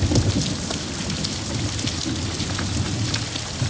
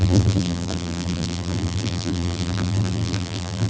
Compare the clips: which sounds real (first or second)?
first